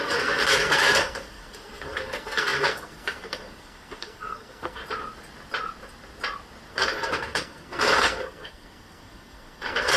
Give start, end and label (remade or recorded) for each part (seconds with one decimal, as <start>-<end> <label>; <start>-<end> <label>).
0.0-4.8 remade; 4.8-6.7 recorded; 6.7-10.0 remade